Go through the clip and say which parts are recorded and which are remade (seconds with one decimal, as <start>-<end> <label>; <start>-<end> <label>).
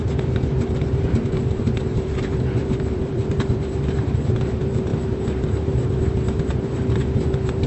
0.0-7.7 remade